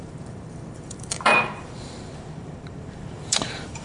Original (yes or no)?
no